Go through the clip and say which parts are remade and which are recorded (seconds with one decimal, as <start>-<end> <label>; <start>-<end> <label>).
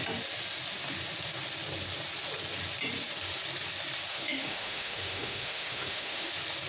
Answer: 0.0-4.1 recorded; 4.1-6.3 remade; 6.3-6.7 recorded